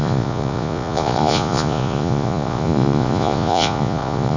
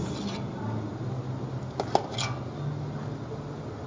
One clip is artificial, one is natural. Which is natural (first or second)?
second